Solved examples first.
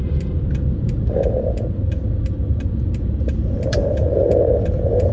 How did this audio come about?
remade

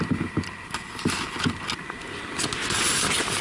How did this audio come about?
recorded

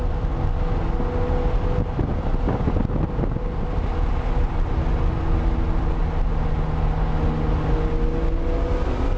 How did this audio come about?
recorded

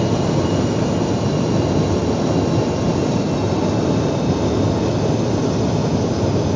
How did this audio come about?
recorded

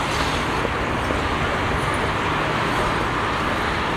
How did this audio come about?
recorded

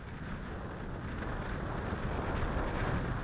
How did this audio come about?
recorded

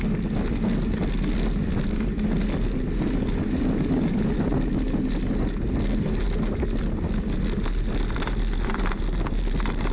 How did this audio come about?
recorded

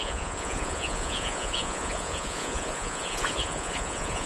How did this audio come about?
remade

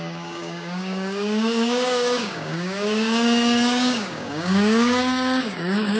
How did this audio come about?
remade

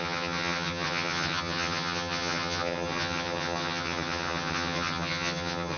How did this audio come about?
remade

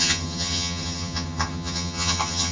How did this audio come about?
remade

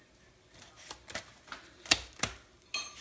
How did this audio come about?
recorded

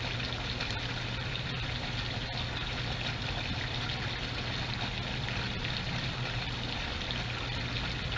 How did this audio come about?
recorded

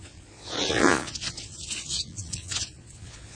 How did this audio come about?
remade